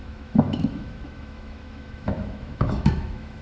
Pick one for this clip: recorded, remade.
remade